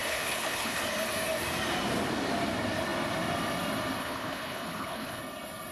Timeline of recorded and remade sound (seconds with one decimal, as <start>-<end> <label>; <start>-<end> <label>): 0.0-0.8 remade; 0.8-4.0 recorded; 4.0-5.2 remade; 5.2-5.7 recorded

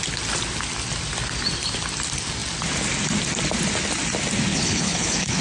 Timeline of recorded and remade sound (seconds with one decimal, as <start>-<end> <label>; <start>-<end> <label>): 0.0-4.5 recorded; 4.5-5.4 remade

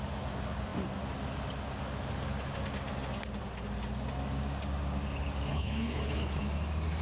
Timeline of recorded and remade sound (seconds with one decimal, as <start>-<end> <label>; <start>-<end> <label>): 0.0-5.5 recorded; 5.5-6.4 remade; 6.4-7.0 recorded

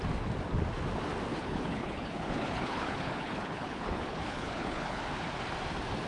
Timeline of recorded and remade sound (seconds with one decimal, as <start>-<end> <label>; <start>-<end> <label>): 0.0-1.3 recorded; 1.3-5.0 remade; 5.0-6.1 recorded